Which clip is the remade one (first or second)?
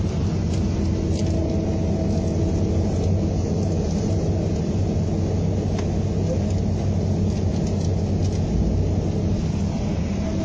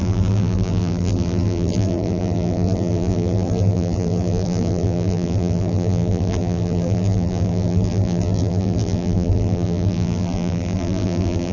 second